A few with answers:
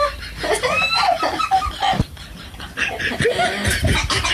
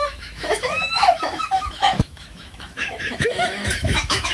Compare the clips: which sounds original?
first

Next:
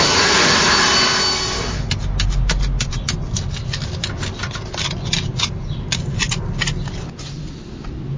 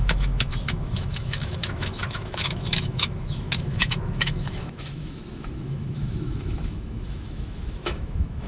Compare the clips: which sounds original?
first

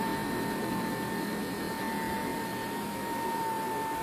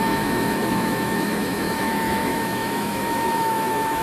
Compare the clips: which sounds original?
first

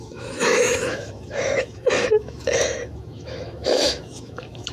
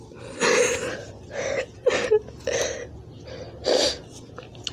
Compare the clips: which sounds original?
second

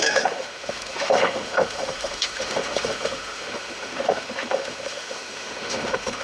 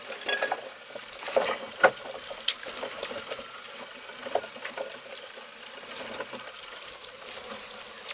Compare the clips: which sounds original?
second